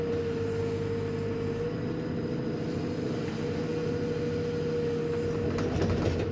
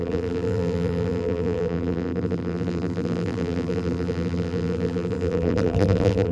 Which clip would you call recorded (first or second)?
first